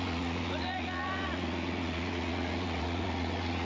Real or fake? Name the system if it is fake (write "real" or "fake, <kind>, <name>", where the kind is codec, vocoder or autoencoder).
fake, vocoder, Vocos